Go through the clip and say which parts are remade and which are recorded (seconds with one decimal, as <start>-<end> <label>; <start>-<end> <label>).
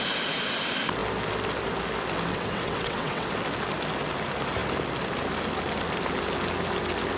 0.0-2.3 recorded; 2.3-3.3 remade; 3.3-7.2 recorded